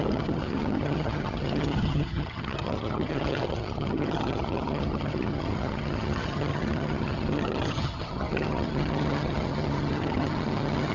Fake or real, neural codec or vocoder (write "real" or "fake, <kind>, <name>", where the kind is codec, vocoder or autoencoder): fake, vocoder, HiFi-GAN